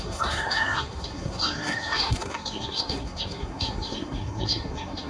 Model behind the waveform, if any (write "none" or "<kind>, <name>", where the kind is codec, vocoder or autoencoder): codec, SNAC